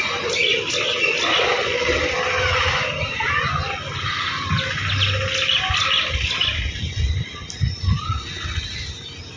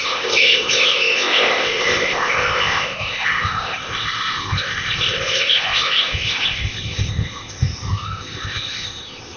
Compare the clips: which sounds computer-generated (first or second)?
second